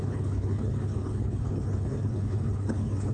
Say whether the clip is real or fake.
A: fake